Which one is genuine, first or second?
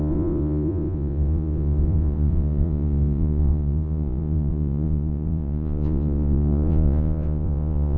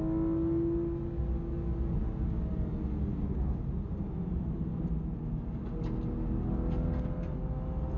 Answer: second